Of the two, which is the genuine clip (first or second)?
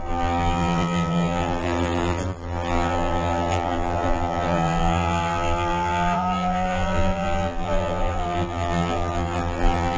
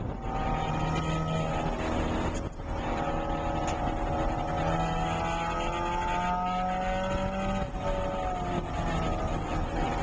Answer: second